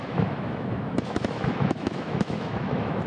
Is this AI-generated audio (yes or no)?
yes